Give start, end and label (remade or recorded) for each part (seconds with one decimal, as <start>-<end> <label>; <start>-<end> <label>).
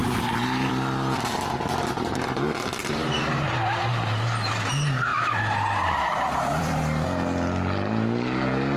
0.0-0.7 remade; 0.7-2.8 recorded; 2.8-3.5 remade; 3.5-5.1 recorded; 5.1-6.8 remade; 6.8-8.8 recorded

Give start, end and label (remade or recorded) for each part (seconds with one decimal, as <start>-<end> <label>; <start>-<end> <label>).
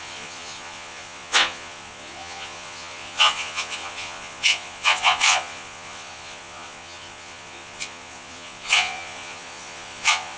0.0-10.4 remade